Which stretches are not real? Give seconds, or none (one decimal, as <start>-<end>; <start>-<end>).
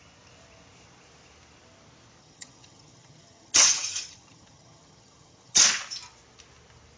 2.2-5.6